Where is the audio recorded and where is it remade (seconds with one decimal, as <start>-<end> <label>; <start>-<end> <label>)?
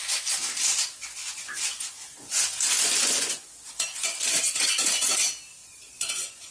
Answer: 0.0-1.2 recorded; 1.2-5.1 remade; 5.1-5.6 recorded; 5.6-6.5 remade